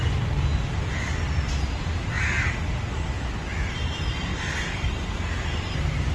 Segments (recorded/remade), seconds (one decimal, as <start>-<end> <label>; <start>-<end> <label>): 0.0-0.5 recorded; 0.5-1.8 remade; 1.8-3.5 recorded; 3.5-4.9 remade; 4.9-6.1 recorded